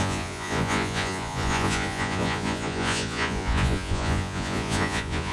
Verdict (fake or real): fake